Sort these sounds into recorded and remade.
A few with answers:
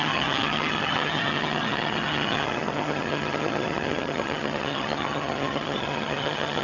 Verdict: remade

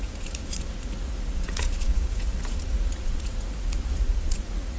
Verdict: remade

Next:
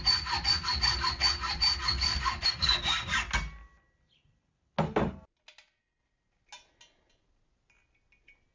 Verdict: recorded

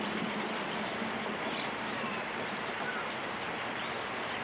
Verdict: recorded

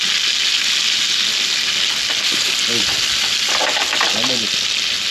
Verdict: recorded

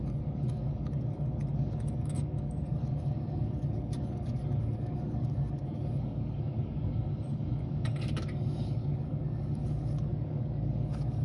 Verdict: remade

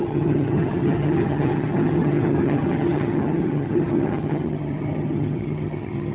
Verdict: remade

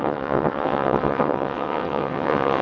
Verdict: remade